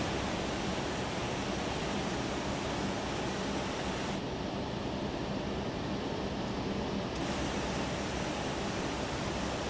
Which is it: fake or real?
real